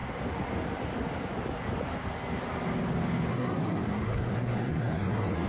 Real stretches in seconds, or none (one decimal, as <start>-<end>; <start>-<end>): 0.0-3.3